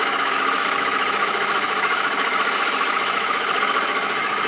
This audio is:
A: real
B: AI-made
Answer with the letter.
B